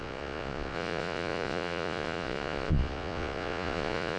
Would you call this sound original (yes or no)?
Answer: no